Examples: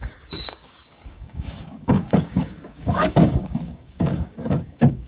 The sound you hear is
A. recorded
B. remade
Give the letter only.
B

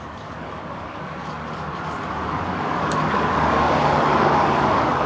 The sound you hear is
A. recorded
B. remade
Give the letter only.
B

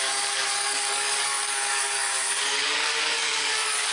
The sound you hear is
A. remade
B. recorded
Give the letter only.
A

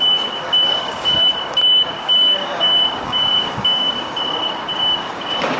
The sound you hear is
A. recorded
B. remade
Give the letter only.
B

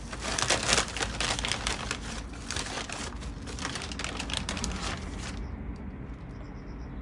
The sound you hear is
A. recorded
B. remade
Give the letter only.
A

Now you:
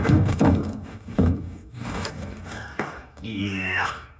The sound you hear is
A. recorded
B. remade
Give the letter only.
B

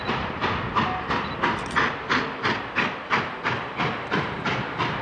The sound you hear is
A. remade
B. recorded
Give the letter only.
B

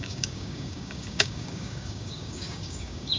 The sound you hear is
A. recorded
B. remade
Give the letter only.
B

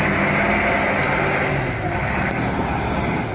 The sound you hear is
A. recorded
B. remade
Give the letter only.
A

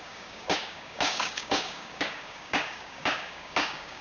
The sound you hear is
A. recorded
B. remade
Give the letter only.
B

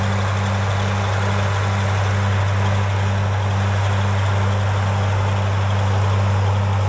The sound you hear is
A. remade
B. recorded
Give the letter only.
B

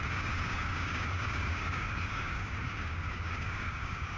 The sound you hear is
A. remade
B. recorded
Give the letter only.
A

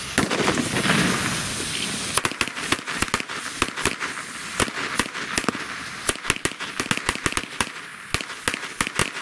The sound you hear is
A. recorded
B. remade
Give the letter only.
A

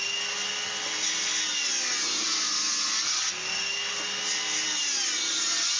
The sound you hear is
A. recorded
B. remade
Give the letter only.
A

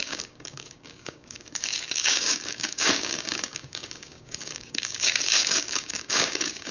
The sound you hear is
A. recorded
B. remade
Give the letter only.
B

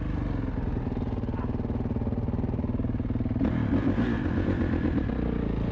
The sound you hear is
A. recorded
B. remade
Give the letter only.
A